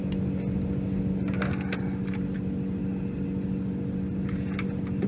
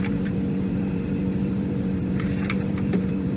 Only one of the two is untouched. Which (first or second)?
first